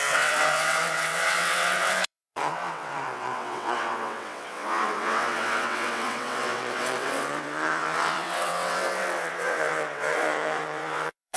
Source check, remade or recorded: remade